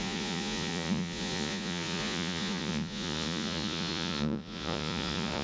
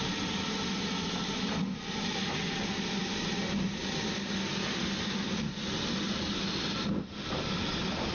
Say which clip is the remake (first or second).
first